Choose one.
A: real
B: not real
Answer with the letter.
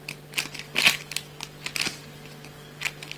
A